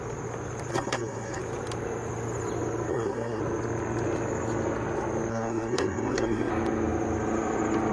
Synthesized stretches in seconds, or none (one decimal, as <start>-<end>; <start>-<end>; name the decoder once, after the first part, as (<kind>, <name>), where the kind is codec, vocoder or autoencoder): 0.7-1.4 (codec, SNAC); 2.9-3.4; 5.3-6.5